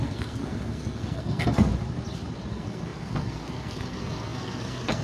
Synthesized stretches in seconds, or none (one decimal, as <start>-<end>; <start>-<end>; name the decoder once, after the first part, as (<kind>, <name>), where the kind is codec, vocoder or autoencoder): 0.0-1.7 (codec, SNAC); 2.5-5.0

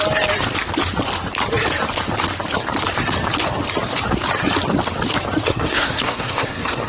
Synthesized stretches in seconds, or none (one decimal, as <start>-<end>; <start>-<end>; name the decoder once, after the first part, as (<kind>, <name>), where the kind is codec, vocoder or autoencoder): 5.5-6.9 (codec, SNAC)

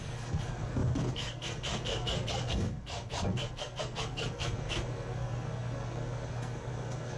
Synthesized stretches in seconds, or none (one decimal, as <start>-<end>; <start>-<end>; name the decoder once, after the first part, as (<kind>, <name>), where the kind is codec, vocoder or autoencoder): 0.0-7.2 (codec, SNAC)

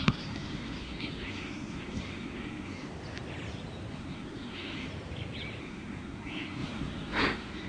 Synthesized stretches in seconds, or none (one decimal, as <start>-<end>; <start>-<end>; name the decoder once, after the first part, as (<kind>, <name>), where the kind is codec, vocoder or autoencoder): 0.0-2.9 (codec, SNAC); 3.9-4.9; 5.6-7.7

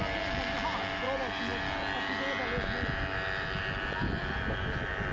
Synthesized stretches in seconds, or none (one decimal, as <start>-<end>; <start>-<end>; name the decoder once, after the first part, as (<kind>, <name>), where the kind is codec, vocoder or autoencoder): none